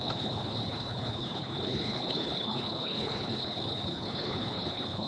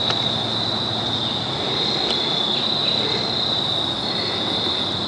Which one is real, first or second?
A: second